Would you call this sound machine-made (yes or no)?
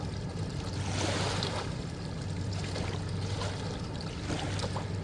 no